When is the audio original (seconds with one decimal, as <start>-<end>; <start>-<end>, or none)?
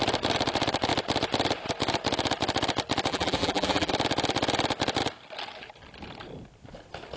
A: 0.0-3.1; 3.9-7.2